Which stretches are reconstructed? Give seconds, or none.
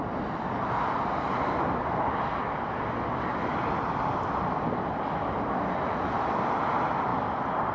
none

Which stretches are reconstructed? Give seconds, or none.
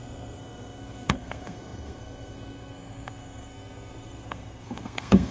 0.0-5.3 (codec, SNAC)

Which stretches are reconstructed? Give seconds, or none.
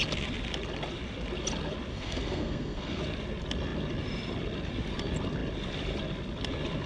1.9-3.0 (codec, SNAC)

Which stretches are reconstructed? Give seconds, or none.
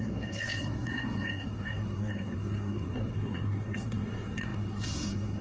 0.0-5.4 (codec, SNAC)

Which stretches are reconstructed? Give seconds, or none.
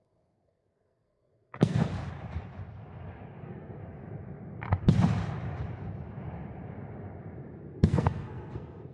0.0-1.9 (codec, SNAC); 3.4-3.8; 7.8-8.9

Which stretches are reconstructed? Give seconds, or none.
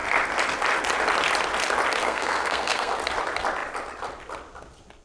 2.0-2.9 (codec, SNAC)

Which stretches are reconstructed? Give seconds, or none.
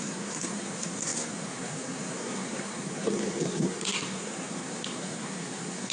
0.0-5.9 (codec, SNAC)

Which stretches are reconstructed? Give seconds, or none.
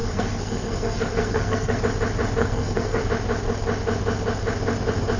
0.0-1.8 (codec, SNAC); 2.4-3.0